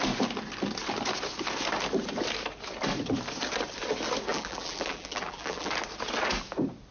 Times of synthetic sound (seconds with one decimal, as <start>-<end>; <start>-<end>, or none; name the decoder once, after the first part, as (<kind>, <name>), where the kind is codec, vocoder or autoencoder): 4.3-5.8 (vocoder, BigVGAN v2)